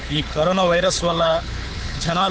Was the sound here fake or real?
fake